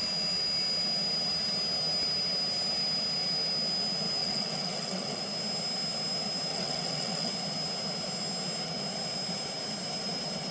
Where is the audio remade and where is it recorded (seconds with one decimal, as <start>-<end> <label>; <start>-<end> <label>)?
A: 0.0-4.2 recorded; 4.2-5.2 remade; 5.2-6.5 recorded; 6.5-7.3 remade; 7.3-10.5 recorded